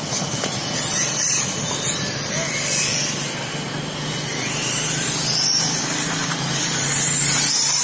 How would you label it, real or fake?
real